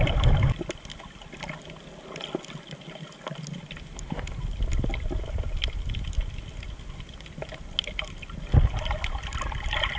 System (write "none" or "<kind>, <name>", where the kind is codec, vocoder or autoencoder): none